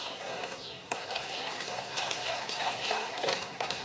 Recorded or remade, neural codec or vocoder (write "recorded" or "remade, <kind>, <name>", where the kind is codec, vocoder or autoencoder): remade, codec, SNAC